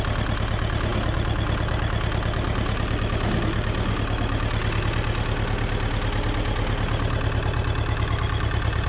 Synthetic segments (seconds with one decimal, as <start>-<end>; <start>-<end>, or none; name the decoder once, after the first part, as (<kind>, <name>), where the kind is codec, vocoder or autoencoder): none